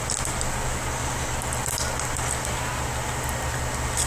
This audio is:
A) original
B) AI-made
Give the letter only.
A